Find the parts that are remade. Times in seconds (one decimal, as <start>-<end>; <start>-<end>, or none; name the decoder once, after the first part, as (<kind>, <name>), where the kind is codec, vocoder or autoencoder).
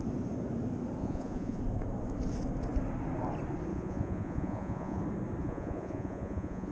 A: 1.0-1.6 (vocoder, Vocos); 3.7-5.0; 5.4-6.7